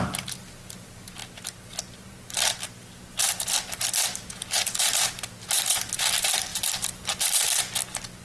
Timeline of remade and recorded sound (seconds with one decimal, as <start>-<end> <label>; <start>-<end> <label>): 0.0-6.5 recorded; 6.5-7.3 remade; 7.3-8.2 recorded